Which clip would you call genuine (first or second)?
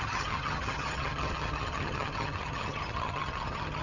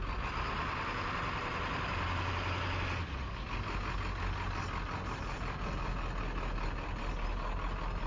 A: second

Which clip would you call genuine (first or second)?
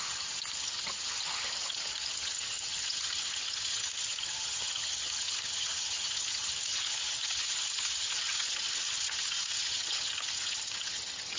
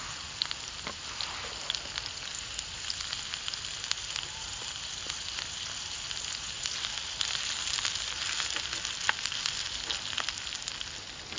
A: second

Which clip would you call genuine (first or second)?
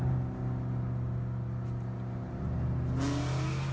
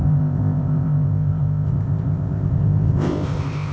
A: first